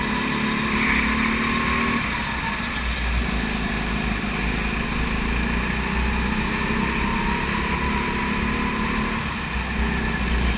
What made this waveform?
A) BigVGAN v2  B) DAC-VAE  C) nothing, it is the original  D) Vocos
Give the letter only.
C